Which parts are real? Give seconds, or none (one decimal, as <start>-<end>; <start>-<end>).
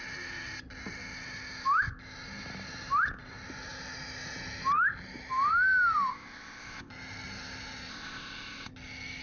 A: 0.0-6.1; 6.9-7.9; 8.7-9.2